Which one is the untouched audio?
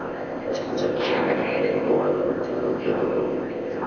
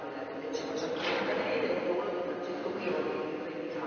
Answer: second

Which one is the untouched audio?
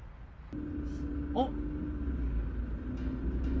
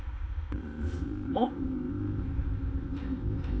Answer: first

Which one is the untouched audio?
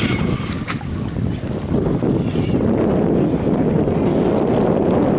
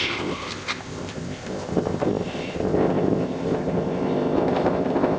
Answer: first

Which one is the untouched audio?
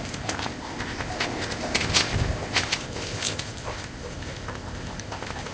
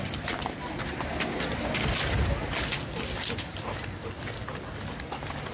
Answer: second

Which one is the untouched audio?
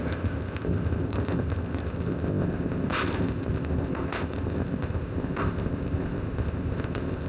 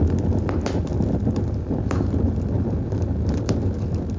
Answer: second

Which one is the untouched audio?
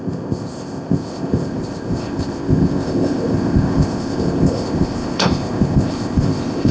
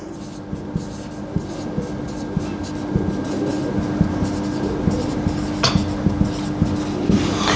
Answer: second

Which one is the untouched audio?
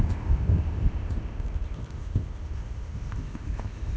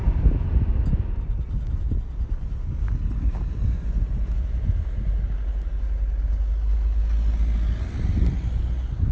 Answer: second